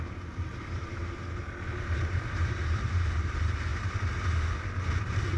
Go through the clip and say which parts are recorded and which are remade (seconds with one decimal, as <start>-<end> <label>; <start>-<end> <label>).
0.0-1.0 remade; 1.0-1.8 recorded; 1.8-3.7 remade; 3.7-5.4 recorded